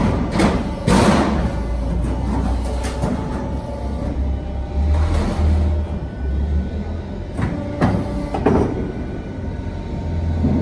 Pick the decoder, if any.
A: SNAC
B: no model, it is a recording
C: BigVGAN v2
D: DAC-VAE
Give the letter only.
B